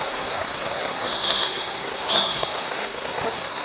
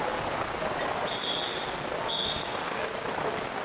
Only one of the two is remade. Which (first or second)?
first